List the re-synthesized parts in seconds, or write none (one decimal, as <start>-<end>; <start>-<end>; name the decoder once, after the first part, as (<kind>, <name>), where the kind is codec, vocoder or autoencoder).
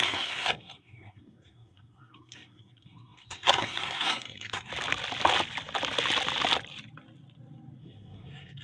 0.0-4.7 (codec, SNAC); 7.8-8.6